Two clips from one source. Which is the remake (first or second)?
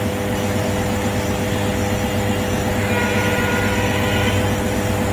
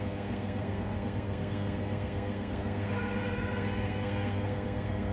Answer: second